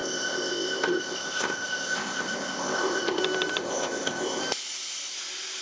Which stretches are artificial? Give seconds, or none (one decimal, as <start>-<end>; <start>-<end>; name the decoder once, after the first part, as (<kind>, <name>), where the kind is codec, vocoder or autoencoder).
0.0-3.2 (codec, ZipCodec); 3.6-4.4